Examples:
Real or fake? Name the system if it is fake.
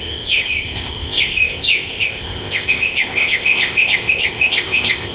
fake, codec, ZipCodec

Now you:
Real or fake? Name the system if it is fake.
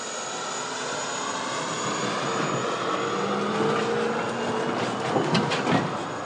real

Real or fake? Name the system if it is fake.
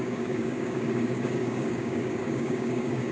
fake, codec, DAC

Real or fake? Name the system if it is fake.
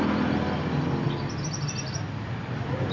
fake, vocoder, BigVGAN v2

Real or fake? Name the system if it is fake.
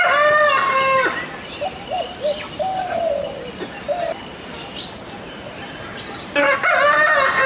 real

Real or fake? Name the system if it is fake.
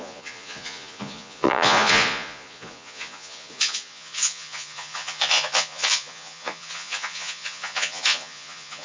fake, vocoder, Vocos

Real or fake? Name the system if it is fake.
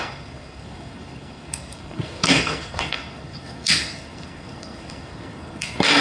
fake, codec, SNAC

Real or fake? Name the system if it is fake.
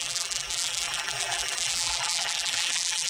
fake, vocoder, BigVGAN v2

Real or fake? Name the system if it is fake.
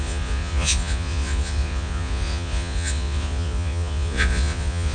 fake, vocoder, Vocos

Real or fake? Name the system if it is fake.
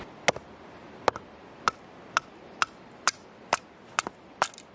real